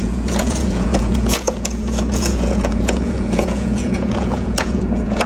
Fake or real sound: fake